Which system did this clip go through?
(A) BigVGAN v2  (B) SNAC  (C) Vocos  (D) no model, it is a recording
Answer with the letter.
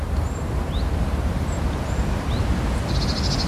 D